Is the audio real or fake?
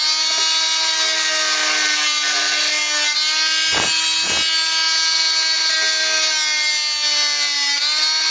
real